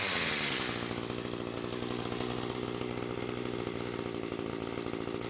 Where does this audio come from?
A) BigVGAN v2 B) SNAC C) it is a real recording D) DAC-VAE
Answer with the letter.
C